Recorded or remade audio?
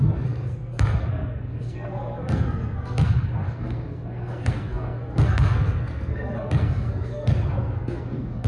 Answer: remade